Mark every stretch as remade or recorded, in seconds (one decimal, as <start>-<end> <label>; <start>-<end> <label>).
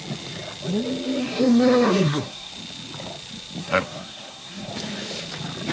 0.0-1.2 recorded; 1.2-2.5 remade; 2.5-3.6 recorded; 3.6-4.7 remade; 4.7-5.7 recorded